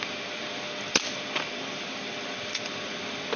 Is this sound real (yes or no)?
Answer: yes